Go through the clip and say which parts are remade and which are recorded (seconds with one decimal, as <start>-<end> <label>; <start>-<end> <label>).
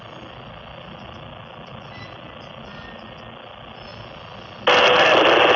0.0-5.6 recorded